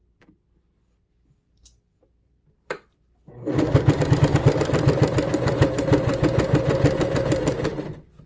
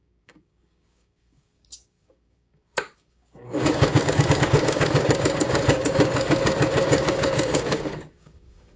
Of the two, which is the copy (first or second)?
second